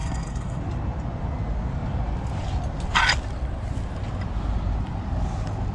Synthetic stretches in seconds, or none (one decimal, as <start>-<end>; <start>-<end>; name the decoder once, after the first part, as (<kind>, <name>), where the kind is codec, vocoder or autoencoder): 0.0-0.6 (codec, SNAC)